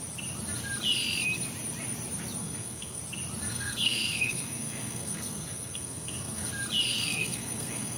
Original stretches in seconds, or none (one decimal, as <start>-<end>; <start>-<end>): 0.0-2.4; 3.0-3.5; 6.5-6.9